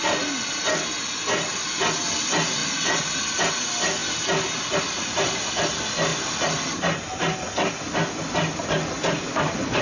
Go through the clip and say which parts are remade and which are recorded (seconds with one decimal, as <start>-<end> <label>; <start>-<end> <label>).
0.0-9.8 recorded